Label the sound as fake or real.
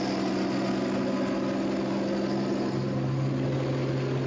real